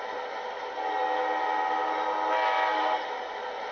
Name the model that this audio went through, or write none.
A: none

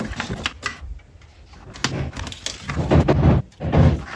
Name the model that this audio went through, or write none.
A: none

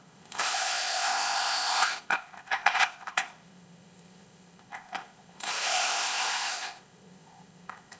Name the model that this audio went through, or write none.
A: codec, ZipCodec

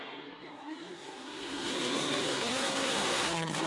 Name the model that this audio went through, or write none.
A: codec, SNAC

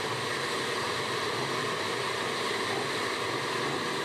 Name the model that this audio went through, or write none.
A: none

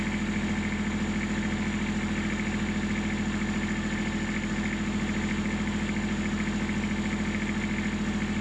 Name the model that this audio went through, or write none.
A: none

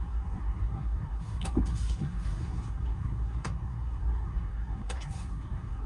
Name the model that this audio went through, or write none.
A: codec, SNAC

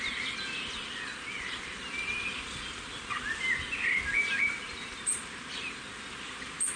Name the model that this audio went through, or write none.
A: none